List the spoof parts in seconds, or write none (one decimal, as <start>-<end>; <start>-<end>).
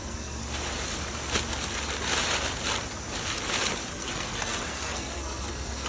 0.0-0.4; 3.9-5.9